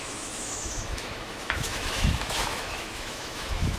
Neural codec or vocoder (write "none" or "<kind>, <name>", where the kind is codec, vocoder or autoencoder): autoencoder, DAC-VAE